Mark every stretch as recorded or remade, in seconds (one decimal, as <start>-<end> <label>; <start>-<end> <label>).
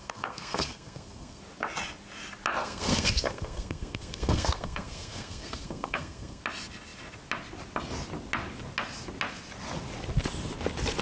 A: 0.0-1.4 remade; 1.4-2.6 recorded; 2.6-6.4 remade; 6.4-11.0 recorded